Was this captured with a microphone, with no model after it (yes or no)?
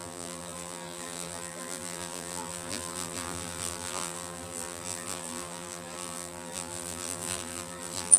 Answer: no